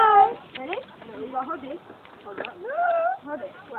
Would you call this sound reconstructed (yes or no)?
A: no